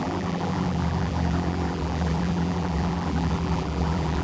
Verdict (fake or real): fake